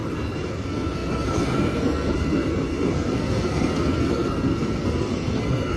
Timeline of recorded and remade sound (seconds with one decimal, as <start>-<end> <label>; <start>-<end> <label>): 0.0-0.5 recorded; 0.5-5.8 remade

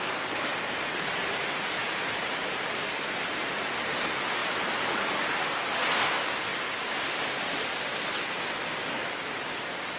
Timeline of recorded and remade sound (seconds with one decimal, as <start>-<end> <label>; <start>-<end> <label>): 0.0-10.0 recorded

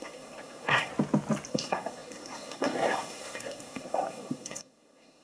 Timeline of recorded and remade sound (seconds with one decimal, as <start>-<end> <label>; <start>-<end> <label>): 0.0-0.9 remade; 0.9-1.5 recorded; 1.5-5.2 remade

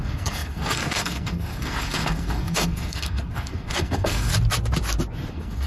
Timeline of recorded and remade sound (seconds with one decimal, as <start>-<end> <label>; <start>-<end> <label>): 0.0-4.3 remade; 4.3-5.3 recorded; 5.3-5.7 remade

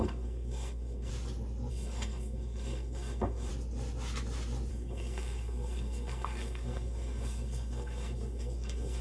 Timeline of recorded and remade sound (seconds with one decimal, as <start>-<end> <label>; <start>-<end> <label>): 0.0-1.1 remade; 1.1-1.7 recorded; 1.7-3.5 remade; 3.5-4.7 recorded; 4.7-9.0 remade

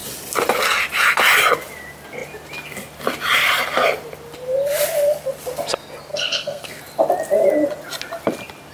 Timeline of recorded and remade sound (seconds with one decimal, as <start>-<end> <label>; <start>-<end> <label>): 0.0-6.1 recorded; 6.1-6.8 remade; 6.8-8.7 recorded

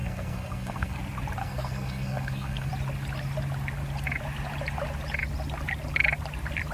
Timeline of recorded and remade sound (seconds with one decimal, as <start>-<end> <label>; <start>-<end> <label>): 0.0-1.0 remade; 1.0-1.4 recorded; 1.4-2.7 remade; 2.7-6.7 recorded